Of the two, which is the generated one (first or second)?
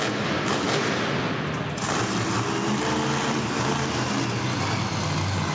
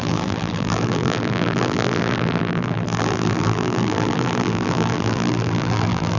second